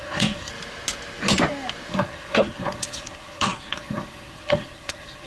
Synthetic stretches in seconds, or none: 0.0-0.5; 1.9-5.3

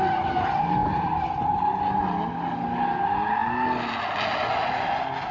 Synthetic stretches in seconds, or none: none

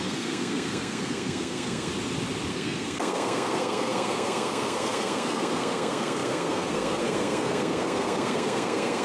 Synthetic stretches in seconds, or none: 0.0-1.9; 2.5-9.0

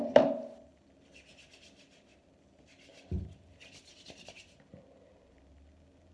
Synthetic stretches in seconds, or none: none

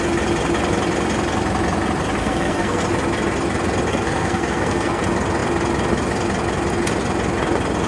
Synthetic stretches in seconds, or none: 2.2-2.8; 3.9-5.0

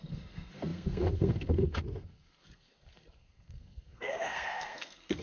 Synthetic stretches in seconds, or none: 0.0-5.2

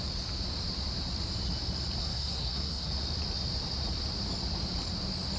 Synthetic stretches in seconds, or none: 2.0-2.9